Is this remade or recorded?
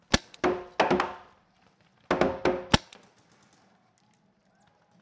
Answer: recorded